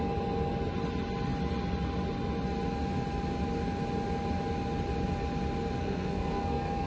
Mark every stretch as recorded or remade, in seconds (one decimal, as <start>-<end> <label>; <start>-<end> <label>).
0.0-5.8 recorded; 5.8-6.9 remade